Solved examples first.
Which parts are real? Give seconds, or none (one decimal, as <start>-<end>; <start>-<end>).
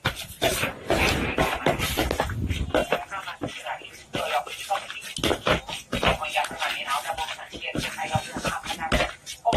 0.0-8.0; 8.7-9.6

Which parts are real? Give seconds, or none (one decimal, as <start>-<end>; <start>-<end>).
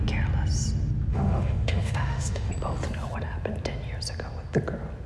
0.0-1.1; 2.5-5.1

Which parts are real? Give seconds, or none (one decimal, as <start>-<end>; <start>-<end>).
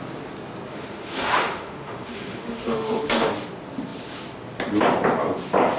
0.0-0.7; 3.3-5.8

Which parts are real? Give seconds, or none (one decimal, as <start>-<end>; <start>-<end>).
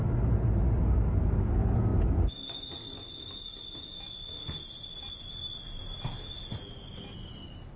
0.0-7.8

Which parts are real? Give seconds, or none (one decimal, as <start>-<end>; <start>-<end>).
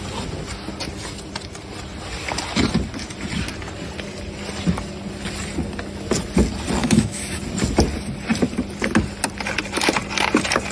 0.0-6.8; 7.4-10.7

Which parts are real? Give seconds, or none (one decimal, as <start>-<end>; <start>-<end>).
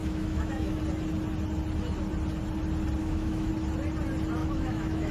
0.8-3.0; 3.5-4.4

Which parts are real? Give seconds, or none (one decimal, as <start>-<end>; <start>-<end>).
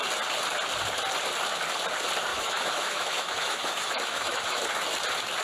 0.0-2.3; 4.6-5.4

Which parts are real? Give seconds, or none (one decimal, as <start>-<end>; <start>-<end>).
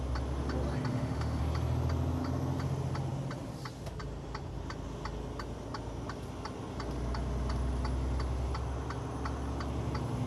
0.0-0.9; 1.4-10.3